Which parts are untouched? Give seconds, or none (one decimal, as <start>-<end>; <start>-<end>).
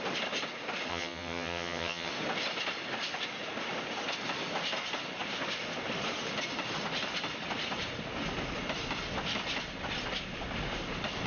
0.0-0.9; 2.1-11.3